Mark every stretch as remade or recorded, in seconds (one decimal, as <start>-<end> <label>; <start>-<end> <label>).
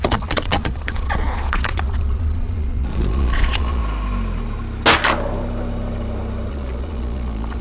0.0-3.8 remade; 3.8-6.5 recorded; 6.5-7.6 remade